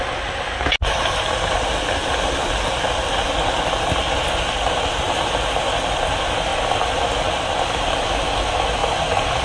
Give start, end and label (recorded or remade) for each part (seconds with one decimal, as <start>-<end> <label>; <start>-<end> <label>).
0.0-9.4 recorded